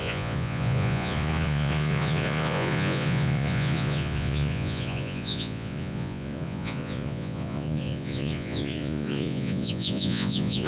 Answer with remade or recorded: remade